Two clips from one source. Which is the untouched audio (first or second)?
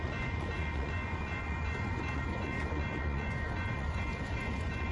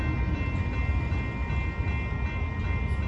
second